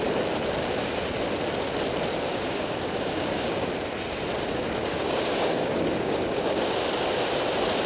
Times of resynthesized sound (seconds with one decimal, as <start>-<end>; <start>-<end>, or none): 2.3-3.7; 4.8-6.7